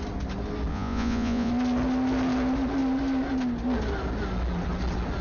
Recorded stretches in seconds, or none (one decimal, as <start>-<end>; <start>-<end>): 0.0-0.7; 1.5-5.2

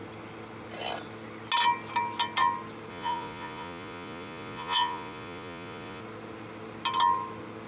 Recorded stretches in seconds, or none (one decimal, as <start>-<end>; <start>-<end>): 0.0-2.9; 6.0-7.7

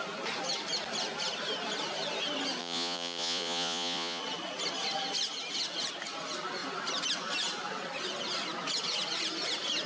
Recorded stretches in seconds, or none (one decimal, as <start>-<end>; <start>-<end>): 0.0-2.6; 4.2-9.9

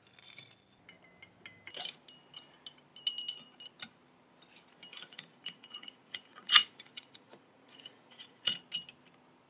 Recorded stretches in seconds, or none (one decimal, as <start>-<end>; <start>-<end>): 0.0-4.9; 8.6-9.5

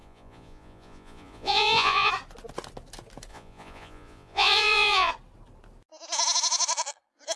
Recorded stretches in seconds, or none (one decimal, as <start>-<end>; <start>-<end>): 2.1-3.3; 5.1-7.4

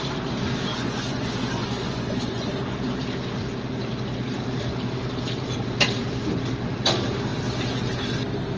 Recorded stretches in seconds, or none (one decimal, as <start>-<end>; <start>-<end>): 0.0-0.7; 2.5-8.6

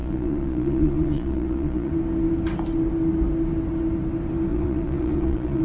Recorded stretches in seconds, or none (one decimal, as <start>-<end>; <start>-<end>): 1.9-4.5

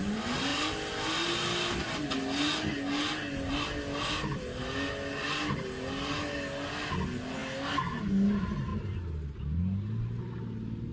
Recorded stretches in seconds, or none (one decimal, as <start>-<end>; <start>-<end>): 0.0-10.9